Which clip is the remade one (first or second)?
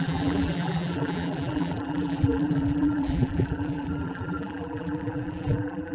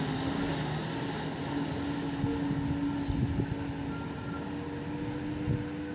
first